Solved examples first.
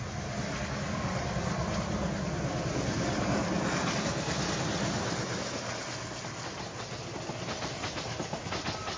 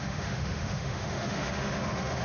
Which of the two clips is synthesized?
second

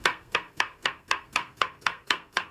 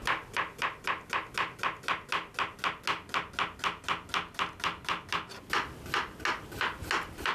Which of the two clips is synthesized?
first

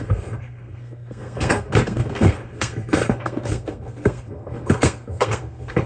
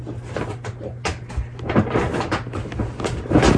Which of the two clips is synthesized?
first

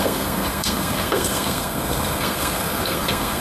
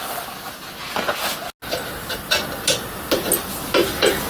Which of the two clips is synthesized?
first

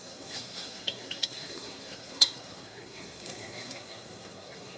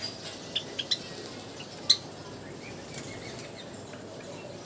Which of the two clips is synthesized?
first